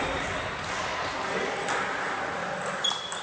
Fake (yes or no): no